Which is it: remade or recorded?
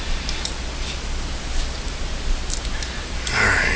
recorded